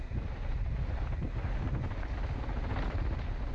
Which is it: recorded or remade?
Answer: recorded